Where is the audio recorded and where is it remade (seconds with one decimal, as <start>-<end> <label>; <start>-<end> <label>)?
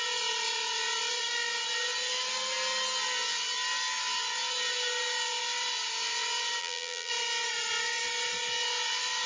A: 0.0-6.6 recorded; 6.6-7.1 remade; 7.1-9.3 recorded